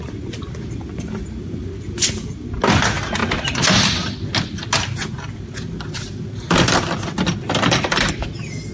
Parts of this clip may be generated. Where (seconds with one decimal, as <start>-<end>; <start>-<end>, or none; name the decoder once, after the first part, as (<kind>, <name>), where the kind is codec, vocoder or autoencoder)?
none